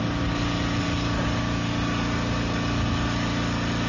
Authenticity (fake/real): real